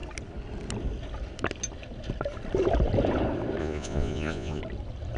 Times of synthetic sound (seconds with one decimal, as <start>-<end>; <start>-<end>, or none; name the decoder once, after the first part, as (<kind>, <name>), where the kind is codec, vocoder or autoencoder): 3.6-4.6 (vocoder, Vocos)